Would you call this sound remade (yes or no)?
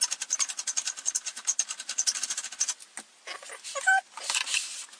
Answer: no